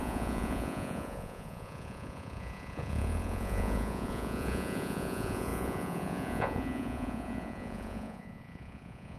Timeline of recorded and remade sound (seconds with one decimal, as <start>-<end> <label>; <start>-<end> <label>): 0.0-9.2 remade